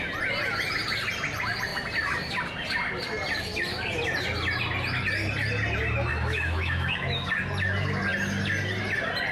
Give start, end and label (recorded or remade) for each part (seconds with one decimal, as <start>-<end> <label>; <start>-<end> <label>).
0.0-6.1 recorded; 6.1-7.3 remade; 7.3-9.3 recorded